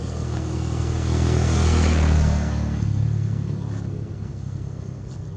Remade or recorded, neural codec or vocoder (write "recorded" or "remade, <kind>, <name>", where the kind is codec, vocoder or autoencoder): remade, codec, SNAC